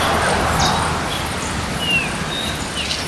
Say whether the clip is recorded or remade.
recorded